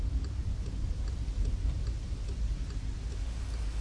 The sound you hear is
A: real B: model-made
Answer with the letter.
A